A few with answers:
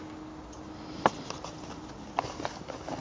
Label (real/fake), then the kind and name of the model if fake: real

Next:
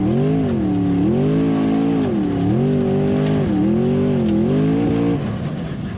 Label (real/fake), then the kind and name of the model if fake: real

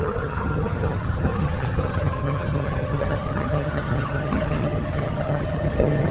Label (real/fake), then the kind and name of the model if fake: fake, vocoder, HiFi-GAN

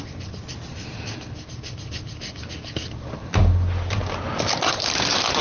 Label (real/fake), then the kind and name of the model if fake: real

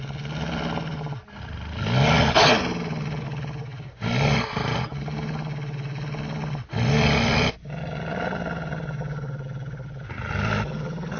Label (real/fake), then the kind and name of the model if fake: real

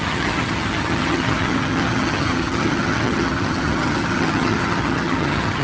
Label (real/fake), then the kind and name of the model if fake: fake, vocoder, HiFi-GAN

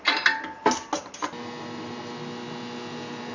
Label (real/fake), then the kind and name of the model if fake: real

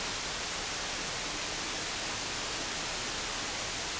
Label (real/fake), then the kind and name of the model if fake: real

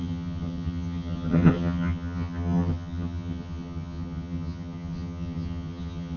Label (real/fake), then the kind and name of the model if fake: fake, vocoder, HiFi-GAN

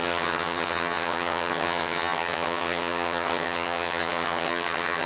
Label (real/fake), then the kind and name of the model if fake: fake, vocoder, HiFi-GAN